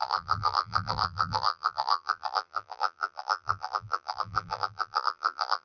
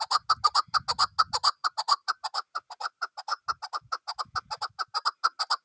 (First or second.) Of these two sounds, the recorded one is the second